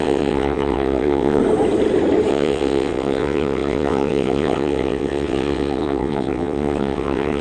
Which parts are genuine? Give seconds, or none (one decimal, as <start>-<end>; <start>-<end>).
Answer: 1.4-2.3